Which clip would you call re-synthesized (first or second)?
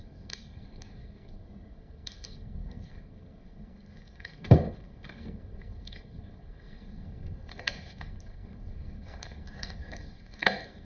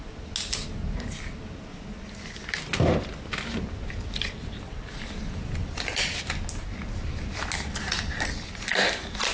first